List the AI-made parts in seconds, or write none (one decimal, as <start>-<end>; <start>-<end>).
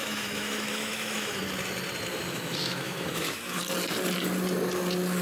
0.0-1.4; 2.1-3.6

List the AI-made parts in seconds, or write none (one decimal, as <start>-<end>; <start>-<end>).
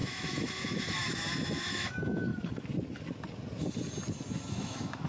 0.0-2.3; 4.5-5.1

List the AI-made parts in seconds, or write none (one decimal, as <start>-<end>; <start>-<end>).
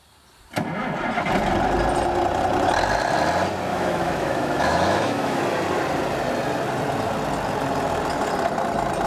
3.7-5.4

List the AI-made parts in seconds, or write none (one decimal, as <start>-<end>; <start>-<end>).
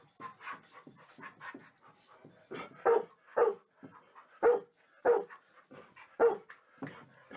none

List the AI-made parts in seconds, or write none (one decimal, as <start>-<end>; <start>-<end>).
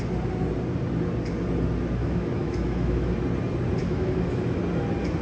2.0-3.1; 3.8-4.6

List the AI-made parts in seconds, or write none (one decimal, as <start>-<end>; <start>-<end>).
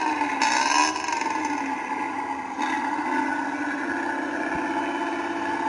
none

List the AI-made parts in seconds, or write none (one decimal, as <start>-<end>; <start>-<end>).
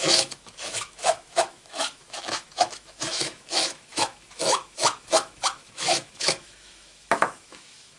0.0-8.0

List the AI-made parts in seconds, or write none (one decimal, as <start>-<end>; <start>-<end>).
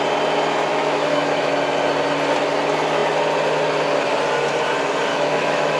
0.7-1.5; 5.1-5.8